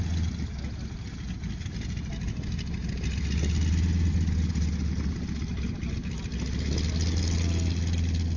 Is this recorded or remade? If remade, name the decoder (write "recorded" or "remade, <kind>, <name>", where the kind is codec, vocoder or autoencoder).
recorded